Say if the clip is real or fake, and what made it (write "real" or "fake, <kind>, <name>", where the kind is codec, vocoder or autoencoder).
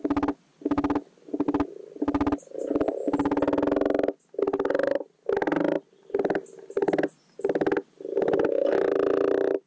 real